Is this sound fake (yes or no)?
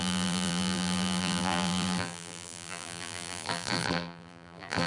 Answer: yes